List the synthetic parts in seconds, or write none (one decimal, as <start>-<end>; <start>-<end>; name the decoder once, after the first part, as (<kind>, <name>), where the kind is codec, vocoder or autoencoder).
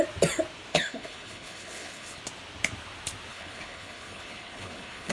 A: 0.7-2.2 (codec, HILCodec); 3.3-5.1